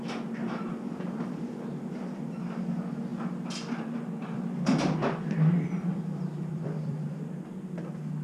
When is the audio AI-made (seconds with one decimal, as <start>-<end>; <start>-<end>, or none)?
0.4-2.7; 3.1-7.4

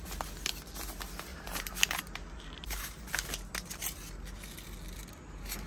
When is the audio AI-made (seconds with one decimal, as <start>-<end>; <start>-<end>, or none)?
1.3-3.0

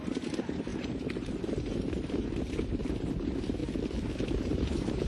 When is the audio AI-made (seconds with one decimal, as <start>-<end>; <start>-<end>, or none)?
0.0-3.6; 4.4-5.1